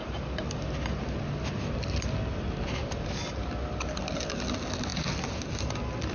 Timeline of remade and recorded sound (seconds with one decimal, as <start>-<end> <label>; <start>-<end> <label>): 0.0-6.1 recorded

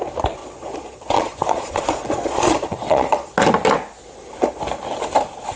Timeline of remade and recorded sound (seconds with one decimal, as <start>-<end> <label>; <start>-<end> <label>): 0.0-0.4 recorded; 0.4-3.3 remade; 3.3-5.6 recorded

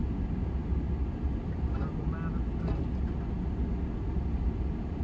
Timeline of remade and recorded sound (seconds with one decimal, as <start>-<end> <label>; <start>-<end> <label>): 0.0-5.0 recorded

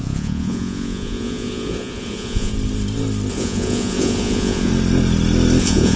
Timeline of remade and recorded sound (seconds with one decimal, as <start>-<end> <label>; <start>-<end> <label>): 0.0-2.5 remade; 2.5-3.3 recorded; 3.3-4.7 remade; 4.7-5.6 recorded; 5.6-6.0 remade

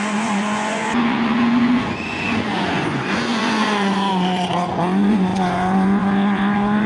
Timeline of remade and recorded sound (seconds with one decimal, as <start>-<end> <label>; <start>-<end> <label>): 0.0-6.9 remade

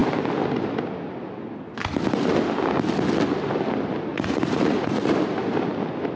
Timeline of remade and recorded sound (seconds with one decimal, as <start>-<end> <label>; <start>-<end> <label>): 0.0-4.1 recorded; 4.1-5.1 remade; 5.1-6.2 recorded

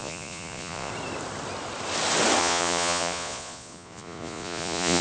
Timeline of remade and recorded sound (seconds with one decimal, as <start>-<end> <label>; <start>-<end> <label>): 0.0-0.9 remade; 0.9-2.4 recorded; 2.4-5.0 remade

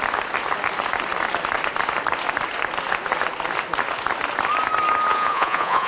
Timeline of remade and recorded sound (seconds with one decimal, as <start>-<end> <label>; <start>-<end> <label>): 0.0-5.1 recorded; 5.1-5.9 remade